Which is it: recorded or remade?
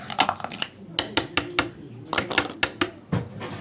recorded